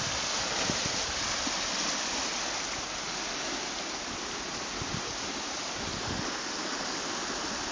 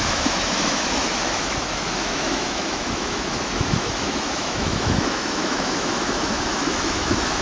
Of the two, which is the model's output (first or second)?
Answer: second